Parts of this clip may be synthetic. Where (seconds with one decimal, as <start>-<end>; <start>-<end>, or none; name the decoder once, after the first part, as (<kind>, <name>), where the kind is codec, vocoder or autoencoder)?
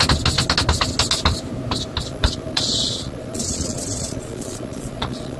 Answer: 2.1-5.4 (vocoder, Vocos)